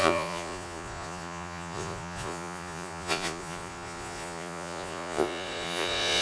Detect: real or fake fake